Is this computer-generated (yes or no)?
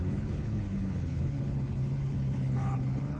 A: yes